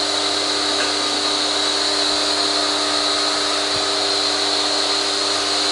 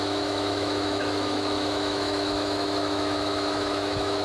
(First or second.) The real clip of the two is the first